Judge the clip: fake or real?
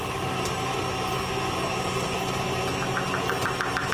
real